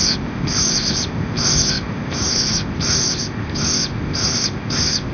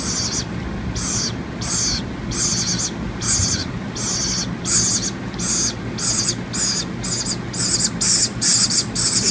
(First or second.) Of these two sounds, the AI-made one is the first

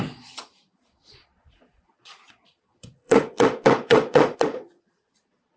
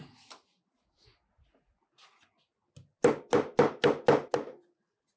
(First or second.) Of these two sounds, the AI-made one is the first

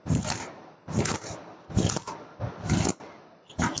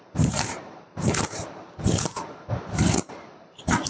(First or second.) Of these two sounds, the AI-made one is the second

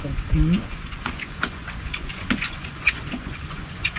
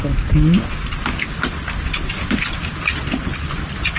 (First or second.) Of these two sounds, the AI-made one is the first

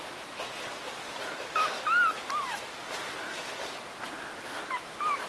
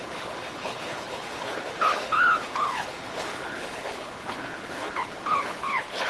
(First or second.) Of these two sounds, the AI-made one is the second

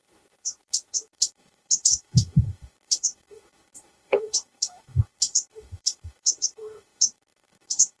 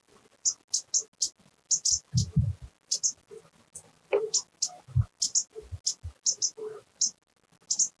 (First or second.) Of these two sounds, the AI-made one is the first